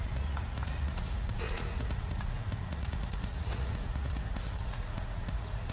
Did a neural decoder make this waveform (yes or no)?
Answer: yes